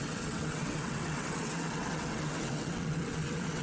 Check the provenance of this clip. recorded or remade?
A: remade